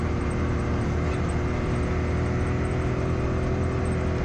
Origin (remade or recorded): recorded